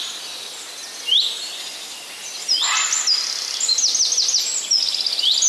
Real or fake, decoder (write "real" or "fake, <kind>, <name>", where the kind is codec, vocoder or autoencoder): real